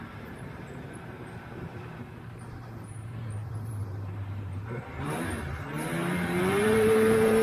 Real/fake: fake